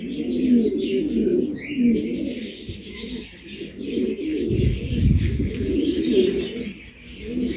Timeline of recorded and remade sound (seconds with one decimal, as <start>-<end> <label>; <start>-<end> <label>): 0.0-0.9 recorded; 0.9-1.5 remade; 1.5-2.4 recorded; 2.4-3.4 remade; 3.4-4.3 recorded; 4.3-6.1 remade; 6.1-7.6 recorded